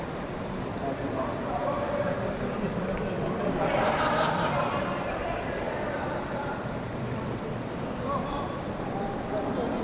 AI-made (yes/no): yes